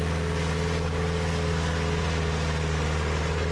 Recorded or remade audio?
recorded